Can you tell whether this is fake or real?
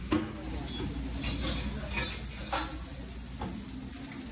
real